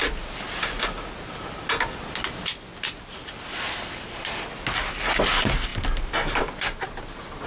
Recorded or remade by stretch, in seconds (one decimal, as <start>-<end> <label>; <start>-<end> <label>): 0.0-7.5 recorded